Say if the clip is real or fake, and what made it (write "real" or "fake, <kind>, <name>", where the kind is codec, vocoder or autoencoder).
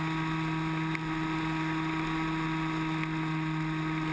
real